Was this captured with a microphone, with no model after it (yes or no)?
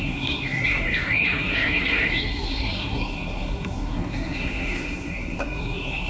no